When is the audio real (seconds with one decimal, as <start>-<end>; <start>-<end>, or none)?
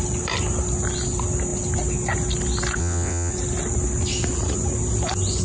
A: 0.0-2.8; 3.3-5.4